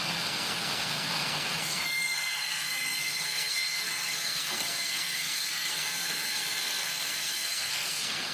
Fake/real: fake